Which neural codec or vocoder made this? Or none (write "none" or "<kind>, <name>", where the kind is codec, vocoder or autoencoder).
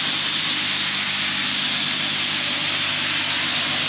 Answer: none